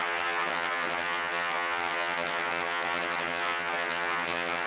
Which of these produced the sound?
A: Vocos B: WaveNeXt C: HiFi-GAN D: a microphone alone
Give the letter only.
C